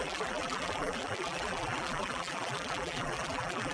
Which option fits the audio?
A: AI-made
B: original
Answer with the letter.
A